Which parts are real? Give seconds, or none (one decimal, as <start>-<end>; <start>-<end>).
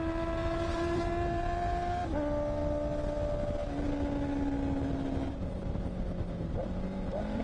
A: 2.0-5.3